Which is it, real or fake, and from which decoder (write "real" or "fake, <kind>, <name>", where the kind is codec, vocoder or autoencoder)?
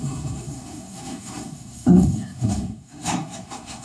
fake, codec, SNAC